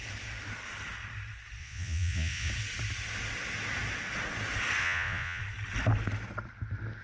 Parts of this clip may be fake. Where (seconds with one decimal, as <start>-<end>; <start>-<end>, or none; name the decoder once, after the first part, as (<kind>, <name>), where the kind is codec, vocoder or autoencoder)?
1.6-2.5 (vocoder, Vocos); 4.8-5.4